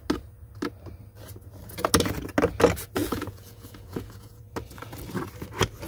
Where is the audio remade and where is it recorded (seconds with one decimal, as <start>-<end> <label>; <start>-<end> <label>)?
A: 0.0-3.0 recorded; 3.0-4.4 remade; 4.4-5.9 recorded